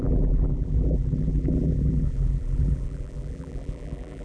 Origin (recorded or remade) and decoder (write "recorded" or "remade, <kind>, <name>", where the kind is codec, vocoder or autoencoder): remade, vocoder, BigVGAN v2